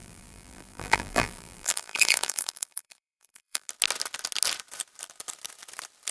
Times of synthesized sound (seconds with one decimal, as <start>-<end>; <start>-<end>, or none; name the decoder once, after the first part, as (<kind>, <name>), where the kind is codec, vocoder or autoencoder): 0.0-3.7 (vocoder, BigVGAN v2)